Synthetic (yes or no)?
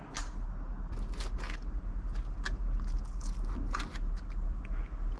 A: no